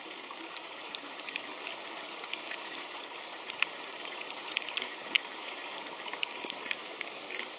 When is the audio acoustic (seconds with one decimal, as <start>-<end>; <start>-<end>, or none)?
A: 3.3-4.0